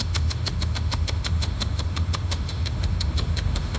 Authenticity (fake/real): fake